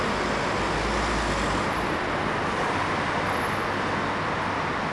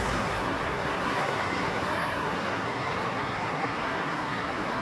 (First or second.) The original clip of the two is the first